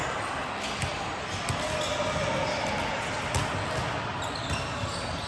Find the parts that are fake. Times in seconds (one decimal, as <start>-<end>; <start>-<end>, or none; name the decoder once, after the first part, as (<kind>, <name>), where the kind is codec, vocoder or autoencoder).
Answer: none